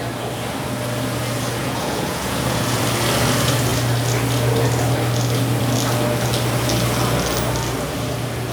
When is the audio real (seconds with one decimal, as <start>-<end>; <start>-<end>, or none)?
0.0-1.6; 2.8-8.5